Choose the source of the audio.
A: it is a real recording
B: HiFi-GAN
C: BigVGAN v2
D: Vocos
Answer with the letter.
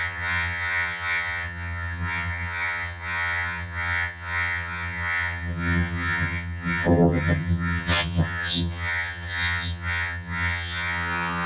B